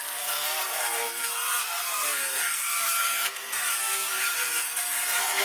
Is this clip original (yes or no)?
no